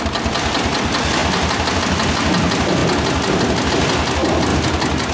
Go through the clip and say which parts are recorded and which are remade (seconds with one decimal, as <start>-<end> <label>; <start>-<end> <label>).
0.0-5.1 recorded